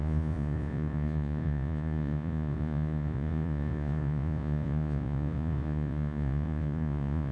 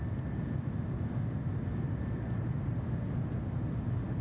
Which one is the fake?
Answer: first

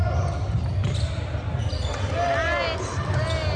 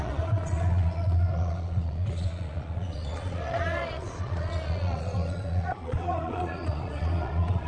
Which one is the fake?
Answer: second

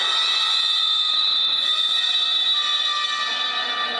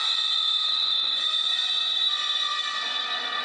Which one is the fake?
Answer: second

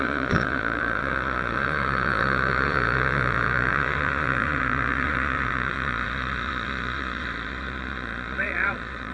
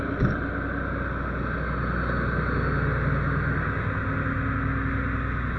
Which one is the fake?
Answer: first